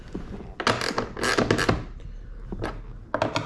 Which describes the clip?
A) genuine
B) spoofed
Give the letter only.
A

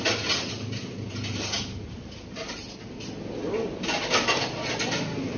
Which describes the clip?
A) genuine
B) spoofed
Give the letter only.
A